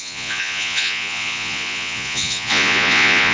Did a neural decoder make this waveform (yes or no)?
yes